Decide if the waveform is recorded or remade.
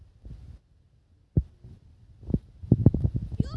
recorded